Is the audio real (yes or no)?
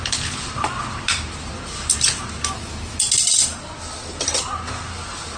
yes